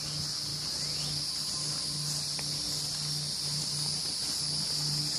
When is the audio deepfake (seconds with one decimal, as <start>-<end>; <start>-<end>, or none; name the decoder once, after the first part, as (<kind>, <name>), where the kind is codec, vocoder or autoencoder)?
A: none